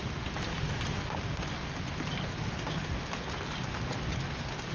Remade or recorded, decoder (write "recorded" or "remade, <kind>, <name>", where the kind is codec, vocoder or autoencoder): recorded